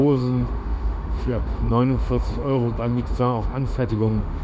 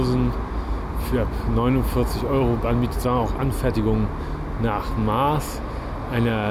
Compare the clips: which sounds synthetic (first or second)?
first